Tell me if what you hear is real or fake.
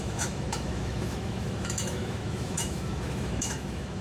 fake